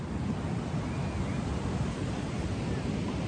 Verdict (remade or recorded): recorded